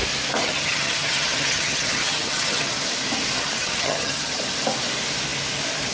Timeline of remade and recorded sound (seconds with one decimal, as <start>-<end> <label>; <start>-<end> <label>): 0.0-0.4 recorded; 0.4-2.7 remade; 2.7-3.6 recorded; 3.6-4.4 remade; 4.4-5.9 recorded